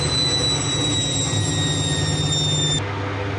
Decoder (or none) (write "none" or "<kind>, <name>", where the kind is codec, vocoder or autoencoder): none